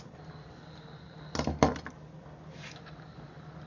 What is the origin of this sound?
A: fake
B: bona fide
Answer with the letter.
B